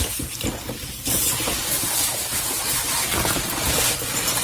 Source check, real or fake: fake